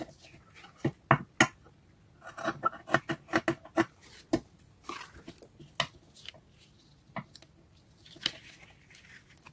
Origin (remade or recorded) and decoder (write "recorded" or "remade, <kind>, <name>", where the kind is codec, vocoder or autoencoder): recorded